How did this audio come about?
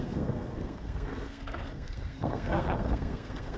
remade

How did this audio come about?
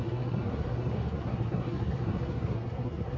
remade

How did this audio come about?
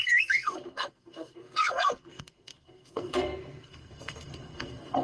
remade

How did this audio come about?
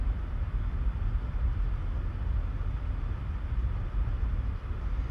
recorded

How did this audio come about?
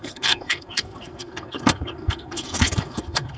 remade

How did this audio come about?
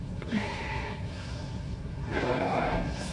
remade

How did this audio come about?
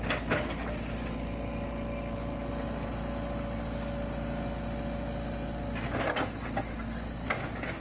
recorded